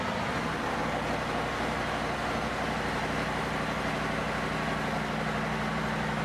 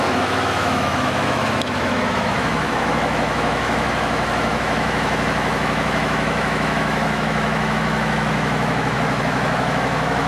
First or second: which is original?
first